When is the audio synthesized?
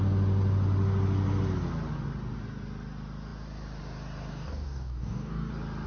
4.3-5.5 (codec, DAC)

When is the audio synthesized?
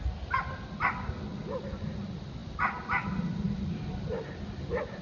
none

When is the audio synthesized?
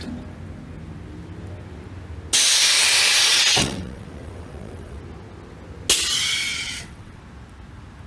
3.3-5.0 (vocoder, WaveNeXt); 6.5-7.2